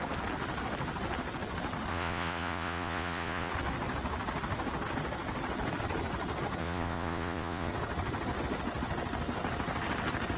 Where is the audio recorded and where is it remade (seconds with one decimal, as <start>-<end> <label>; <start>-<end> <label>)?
0.0-1.9 recorded; 1.9-3.5 remade; 3.5-6.6 recorded; 6.6-7.7 remade; 7.7-10.4 recorded